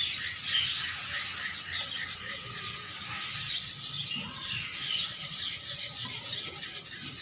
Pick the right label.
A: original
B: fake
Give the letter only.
A